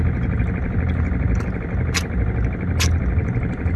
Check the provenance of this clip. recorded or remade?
recorded